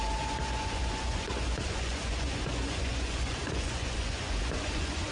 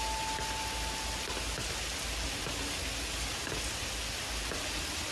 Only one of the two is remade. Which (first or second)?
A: first